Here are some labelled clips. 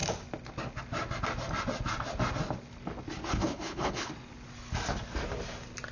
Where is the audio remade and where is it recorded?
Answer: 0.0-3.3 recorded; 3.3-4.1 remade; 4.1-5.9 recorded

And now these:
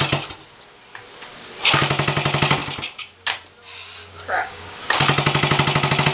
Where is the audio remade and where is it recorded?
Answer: 0.0-4.0 recorded; 4.0-4.8 remade; 4.8-6.1 recorded

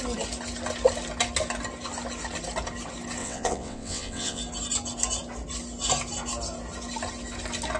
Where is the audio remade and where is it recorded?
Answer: 0.0-3.2 recorded; 3.2-4.4 remade; 4.4-7.8 recorded